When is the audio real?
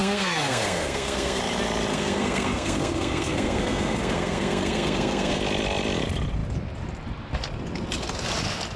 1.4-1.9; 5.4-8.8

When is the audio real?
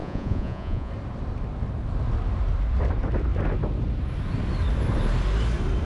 0.9-5.8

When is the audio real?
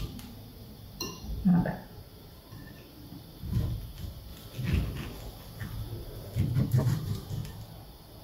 4.3-6.4; 7.4-8.2